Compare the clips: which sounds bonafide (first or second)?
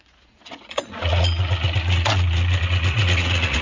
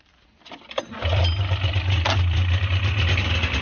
second